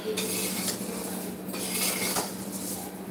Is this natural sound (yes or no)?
yes